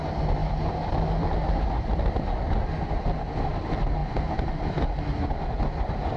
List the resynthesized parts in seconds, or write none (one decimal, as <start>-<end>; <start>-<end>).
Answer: none